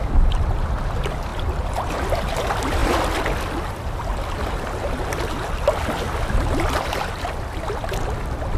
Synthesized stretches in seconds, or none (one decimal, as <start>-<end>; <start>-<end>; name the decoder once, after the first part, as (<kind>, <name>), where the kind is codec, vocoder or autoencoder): none